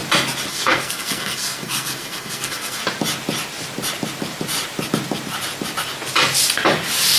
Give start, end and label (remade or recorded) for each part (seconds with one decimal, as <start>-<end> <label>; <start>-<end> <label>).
0.0-0.5 recorded; 0.5-2.8 remade; 2.8-7.2 recorded